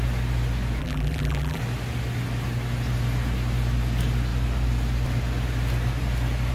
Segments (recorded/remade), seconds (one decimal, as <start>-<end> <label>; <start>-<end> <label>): 0.0-0.8 recorded; 0.8-1.6 remade; 1.6-6.5 recorded